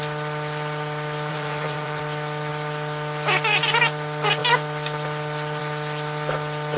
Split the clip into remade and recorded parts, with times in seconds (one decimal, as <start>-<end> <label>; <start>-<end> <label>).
0.0-1.3 recorded; 1.3-2.0 remade; 2.0-6.8 recorded